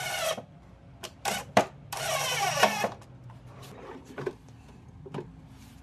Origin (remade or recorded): recorded